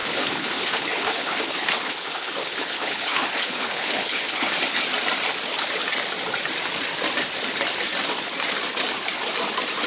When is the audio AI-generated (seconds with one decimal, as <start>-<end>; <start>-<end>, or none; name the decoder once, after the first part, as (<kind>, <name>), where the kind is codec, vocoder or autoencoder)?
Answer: 0.0-4.5 (codec, HILCodec)